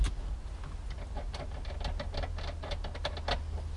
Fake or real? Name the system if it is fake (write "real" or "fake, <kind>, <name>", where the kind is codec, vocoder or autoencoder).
real